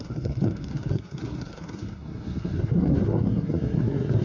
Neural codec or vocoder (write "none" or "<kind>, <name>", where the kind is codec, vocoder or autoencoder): codec, SNAC